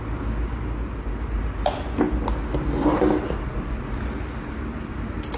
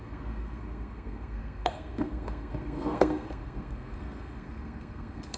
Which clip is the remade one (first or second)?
second